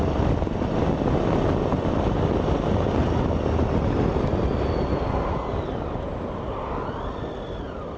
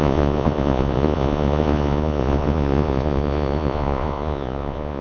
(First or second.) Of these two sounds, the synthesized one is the second